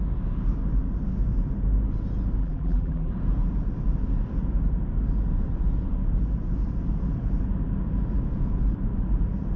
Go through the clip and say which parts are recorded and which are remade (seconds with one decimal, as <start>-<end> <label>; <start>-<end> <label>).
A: 0.0-2.4 recorded; 2.4-3.1 remade; 3.1-9.6 recorded